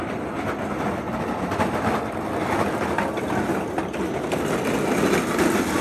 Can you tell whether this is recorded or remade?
recorded